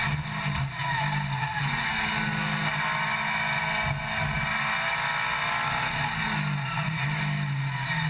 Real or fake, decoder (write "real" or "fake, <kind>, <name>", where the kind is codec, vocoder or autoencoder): real